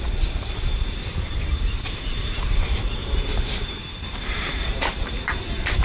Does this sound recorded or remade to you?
remade